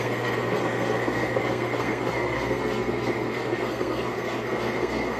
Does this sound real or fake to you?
fake